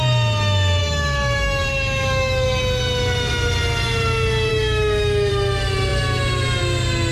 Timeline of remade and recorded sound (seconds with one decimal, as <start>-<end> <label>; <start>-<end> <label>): 0.0-0.8 recorded; 0.8-2.6 remade; 2.6-4.5 recorded; 4.5-5.3 remade; 5.3-7.1 recorded